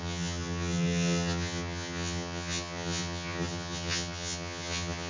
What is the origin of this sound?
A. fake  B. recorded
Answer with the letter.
A